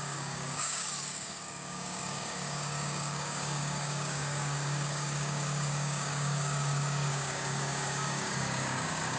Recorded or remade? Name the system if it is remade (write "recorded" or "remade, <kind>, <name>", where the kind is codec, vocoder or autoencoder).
remade, codec, DAC